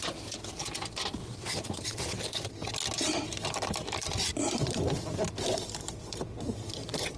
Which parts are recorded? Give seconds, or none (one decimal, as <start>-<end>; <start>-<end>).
0.0-1.2; 2.2-7.2

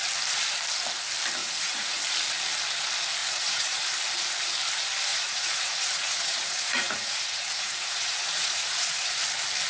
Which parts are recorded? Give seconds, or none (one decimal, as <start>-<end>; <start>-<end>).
0.0-1.4; 2.0-3.2; 3.8-5.1; 9.2-9.7